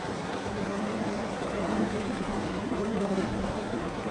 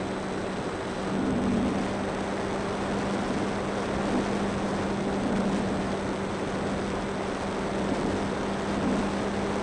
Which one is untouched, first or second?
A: second